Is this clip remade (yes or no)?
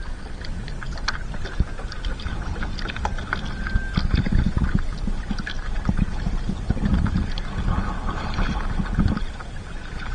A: no